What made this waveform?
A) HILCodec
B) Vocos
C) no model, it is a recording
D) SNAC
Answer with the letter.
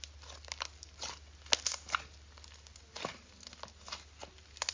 C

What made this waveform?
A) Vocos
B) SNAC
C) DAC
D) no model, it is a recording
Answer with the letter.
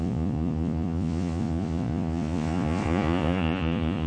A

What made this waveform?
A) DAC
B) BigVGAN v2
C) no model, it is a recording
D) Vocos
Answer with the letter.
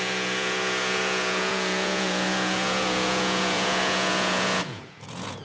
D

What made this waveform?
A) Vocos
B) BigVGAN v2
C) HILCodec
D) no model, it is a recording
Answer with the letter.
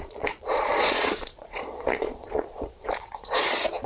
A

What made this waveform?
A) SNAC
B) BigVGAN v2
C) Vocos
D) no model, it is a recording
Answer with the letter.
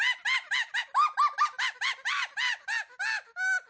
D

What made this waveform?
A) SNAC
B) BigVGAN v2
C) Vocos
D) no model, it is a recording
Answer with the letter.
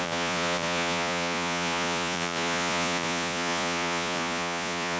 C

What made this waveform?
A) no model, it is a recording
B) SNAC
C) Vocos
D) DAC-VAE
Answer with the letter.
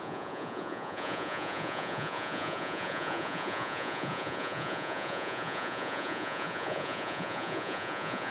C